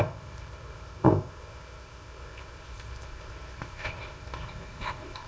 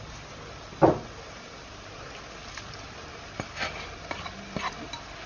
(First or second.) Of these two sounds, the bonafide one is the second